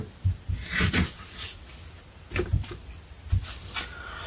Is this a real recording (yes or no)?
yes